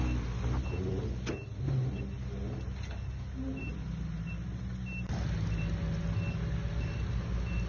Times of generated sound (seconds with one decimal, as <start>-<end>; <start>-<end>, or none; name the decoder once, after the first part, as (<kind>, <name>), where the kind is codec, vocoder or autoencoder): none